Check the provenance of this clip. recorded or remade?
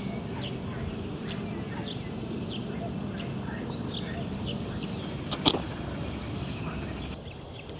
recorded